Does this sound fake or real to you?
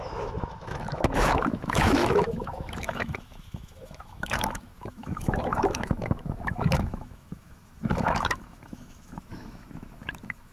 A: fake